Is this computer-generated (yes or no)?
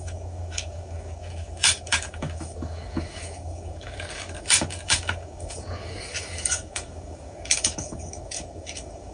yes